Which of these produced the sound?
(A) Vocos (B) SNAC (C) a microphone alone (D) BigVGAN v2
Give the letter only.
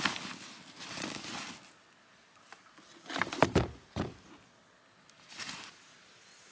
C